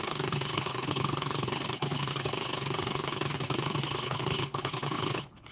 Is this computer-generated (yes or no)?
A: yes